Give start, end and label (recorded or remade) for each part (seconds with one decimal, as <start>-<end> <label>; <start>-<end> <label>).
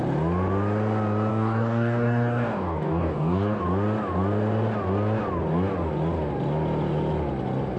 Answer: 0.0-1.3 recorded; 1.3-3.6 remade; 3.6-7.8 recorded